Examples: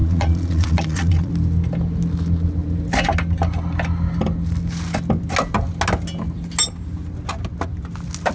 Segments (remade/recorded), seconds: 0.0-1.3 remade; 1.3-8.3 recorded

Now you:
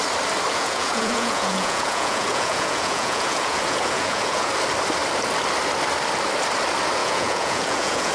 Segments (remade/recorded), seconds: 0.0-0.5 recorded; 0.5-4.5 remade; 4.5-7.0 recorded; 7.0-8.1 remade

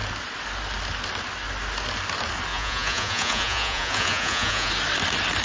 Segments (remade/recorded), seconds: 0.0-2.5 recorded; 2.5-4.7 remade; 4.7-5.4 recorded

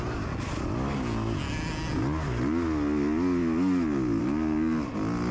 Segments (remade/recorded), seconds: 0.0-5.3 recorded

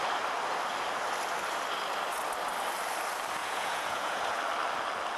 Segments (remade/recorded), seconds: 0.0-3.4 recorded; 3.4-4.4 remade; 4.4-5.2 recorded

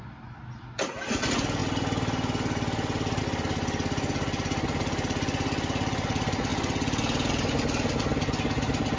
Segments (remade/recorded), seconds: 0.0-9.0 recorded

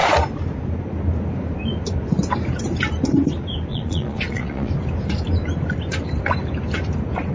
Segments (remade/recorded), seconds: 0.0-3.7 recorded; 3.7-4.7 remade; 4.7-7.3 recorded